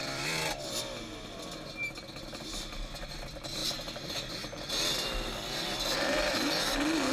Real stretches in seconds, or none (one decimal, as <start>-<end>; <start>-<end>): 0.0-7.1